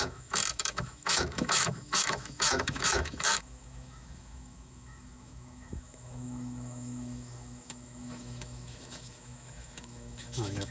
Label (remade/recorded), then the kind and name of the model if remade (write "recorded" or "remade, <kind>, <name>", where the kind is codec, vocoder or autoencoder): remade, autoencoder, DAC-VAE